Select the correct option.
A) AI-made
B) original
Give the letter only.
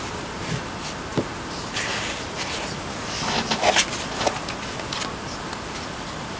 B